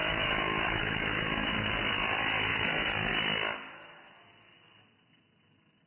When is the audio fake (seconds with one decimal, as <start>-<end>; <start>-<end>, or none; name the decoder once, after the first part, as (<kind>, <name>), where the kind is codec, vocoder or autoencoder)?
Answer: 0.0-1.7 (autoencoder, DAC-VAE)